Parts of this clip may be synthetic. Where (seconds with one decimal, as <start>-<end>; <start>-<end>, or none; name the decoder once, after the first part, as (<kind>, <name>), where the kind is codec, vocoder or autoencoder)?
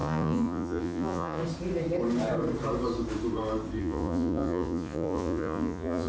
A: 0.0-1.4 (vocoder, Vocos); 3.8-6.1